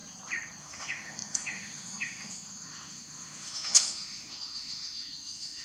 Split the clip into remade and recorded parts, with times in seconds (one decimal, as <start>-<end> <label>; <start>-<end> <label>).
0.0-0.6 recorded; 0.6-5.6 remade